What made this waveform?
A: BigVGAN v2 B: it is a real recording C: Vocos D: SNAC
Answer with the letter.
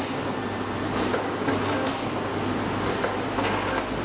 B